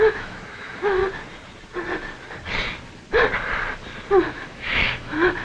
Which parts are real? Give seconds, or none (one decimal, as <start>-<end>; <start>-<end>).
1.0-4.2